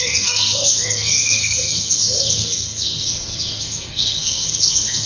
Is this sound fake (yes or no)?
yes